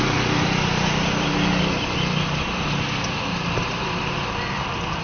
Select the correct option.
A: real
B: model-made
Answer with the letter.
A